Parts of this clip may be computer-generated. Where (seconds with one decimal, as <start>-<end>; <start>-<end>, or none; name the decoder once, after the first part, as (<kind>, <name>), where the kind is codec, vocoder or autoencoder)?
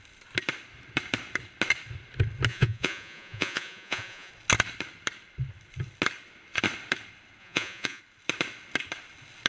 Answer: 2.5-4.3 (vocoder, Vocos); 7.4-8.0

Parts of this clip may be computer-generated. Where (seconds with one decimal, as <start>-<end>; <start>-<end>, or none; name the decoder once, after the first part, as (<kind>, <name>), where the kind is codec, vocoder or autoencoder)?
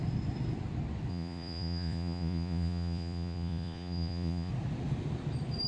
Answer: 1.1-4.5 (vocoder, Vocos)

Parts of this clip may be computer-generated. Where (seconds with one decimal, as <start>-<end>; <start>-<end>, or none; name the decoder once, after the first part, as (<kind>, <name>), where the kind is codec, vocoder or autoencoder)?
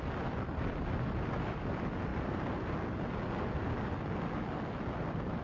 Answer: none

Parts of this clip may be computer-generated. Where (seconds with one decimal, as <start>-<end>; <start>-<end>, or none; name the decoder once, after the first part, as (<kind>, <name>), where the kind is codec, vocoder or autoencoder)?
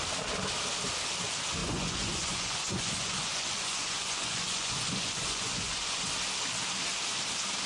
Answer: 1.6-6.1 (vocoder, Vocos)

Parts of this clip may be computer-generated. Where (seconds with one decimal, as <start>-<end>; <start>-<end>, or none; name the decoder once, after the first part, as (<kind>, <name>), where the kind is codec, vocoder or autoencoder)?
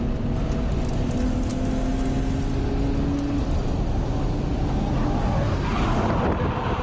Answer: none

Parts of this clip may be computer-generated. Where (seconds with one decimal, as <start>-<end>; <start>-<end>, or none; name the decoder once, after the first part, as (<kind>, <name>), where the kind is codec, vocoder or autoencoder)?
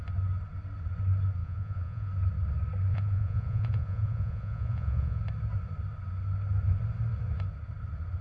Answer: 1.4-2.1 (vocoder, Vocos); 2.9-5.2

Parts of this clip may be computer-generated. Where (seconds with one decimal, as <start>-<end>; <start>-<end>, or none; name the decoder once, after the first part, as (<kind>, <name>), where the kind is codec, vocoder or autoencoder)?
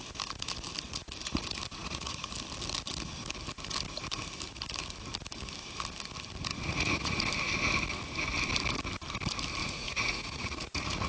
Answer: 1.8-2.3 (vocoder, Vocos); 6.5-7.2; 9.6-11.1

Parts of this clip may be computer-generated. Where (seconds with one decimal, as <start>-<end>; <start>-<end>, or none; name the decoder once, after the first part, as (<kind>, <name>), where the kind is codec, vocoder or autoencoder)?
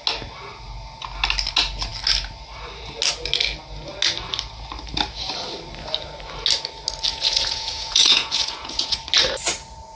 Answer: 7.1-9.0 (vocoder, Vocos)